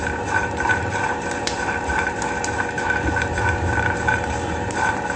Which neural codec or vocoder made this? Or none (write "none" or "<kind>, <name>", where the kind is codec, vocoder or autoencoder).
vocoder, BigVGAN v2